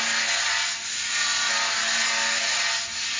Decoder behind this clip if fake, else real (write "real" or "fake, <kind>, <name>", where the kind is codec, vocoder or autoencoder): real